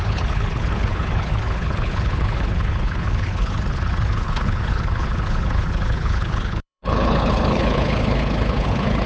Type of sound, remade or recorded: remade